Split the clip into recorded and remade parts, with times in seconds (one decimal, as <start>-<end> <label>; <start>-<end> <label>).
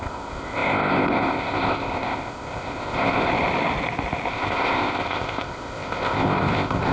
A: 0.0-3.3 remade; 3.3-4.3 recorded; 4.3-6.9 remade